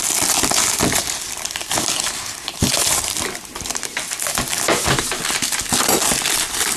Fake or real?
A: real